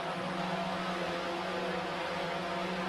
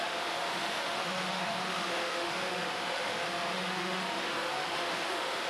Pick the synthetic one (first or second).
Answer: second